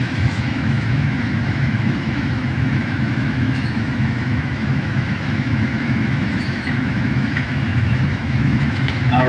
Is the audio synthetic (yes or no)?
yes